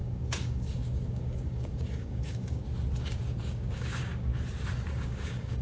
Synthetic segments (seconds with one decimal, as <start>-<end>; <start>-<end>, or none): 0.0-2.6; 3.4-4.3; 4.9-5.6

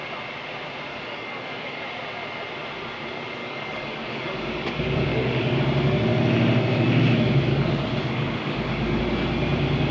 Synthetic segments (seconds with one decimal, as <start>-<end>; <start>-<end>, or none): 0.9-1.8; 3.4-5.6; 7.5-9.0

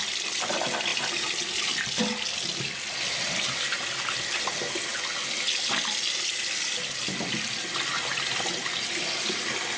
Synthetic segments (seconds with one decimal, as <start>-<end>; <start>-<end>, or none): none

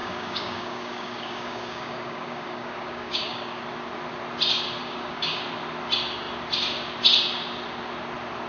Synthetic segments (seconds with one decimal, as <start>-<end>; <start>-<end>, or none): 0.0-3.6; 4.8-5.4

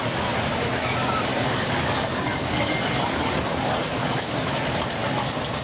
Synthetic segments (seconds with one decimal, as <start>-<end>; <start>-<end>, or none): 1.3-4.7